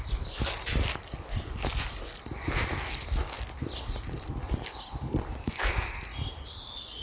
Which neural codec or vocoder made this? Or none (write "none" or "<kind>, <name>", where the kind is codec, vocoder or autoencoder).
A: none